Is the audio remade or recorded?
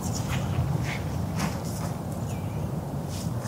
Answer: recorded